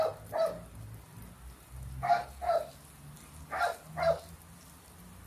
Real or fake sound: real